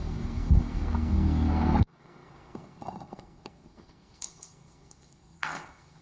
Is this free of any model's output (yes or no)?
no